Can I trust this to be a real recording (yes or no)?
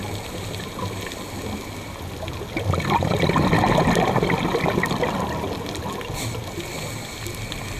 yes